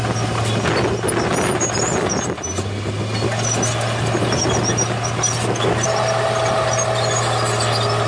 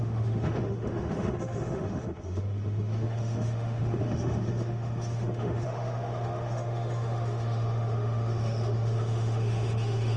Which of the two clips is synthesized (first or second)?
second